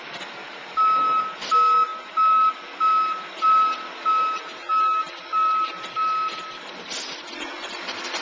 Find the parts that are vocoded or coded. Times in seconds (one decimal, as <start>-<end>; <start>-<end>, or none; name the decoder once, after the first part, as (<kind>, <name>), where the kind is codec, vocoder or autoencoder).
none